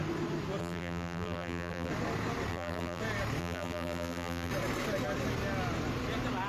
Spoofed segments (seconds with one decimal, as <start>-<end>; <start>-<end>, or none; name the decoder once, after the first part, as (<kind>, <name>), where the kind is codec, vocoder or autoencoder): 0.6-1.9 (vocoder, BigVGAN v2); 2.5-3.0; 3.4-4.5